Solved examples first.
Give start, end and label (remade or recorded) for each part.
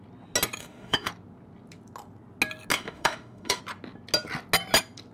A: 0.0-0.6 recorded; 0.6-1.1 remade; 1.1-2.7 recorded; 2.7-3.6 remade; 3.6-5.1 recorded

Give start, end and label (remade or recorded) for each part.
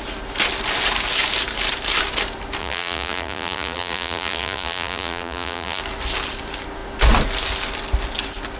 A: 0.0-2.6 recorded; 2.6-5.8 remade; 5.8-8.6 recorded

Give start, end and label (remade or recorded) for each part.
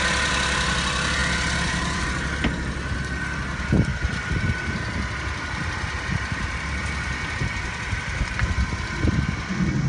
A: 0.0-1.2 recorded; 1.2-2.0 remade; 2.0-3.9 recorded; 3.9-8.2 remade; 8.2-9.9 recorded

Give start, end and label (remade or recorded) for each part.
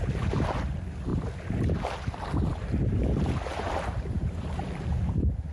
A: 0.0-5.5 remade